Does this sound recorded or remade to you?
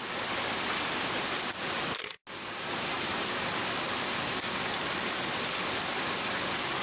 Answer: recorded